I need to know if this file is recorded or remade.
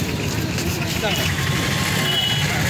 recorded